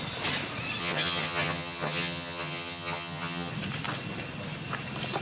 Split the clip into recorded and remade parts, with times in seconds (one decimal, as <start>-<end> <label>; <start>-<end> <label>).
0.0-0.8 recorded; 0.8-3.5 remade; 3.5-5.2 recorded